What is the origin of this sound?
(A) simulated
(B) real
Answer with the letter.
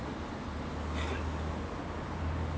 B